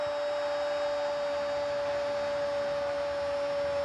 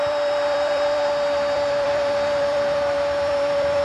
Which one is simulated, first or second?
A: second